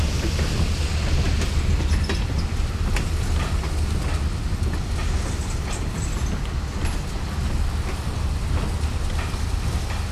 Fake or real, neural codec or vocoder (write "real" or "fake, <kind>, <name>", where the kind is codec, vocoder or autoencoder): real